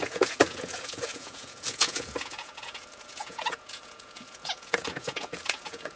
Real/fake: fake